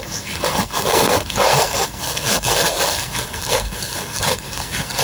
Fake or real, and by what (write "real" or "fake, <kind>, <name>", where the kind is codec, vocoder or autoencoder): fake, codec, SNAC